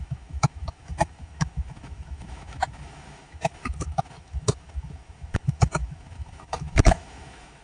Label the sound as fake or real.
fake